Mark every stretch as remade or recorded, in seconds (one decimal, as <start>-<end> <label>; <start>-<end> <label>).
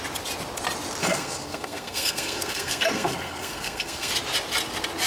0.0-1.0 recorded; 1.0-4.1 remade; 4.1-5.1 recorded